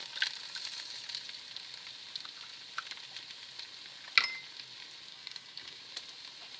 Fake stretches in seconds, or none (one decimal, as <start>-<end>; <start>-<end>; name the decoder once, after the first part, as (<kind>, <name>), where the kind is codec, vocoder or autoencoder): 5.1-5.8 (codec, DAC)